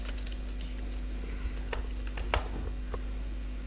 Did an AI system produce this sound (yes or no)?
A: no